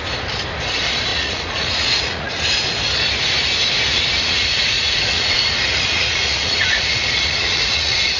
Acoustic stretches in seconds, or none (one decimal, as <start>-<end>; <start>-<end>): 0.0-1.1; 2.3-3.9